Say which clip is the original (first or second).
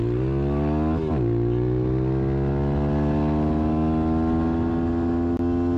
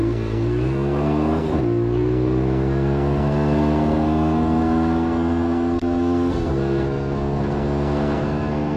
first